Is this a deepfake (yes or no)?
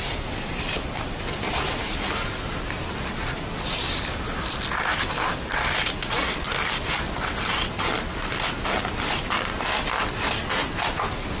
no